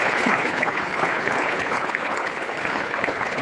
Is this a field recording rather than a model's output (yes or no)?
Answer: no